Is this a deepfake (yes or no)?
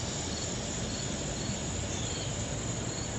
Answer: no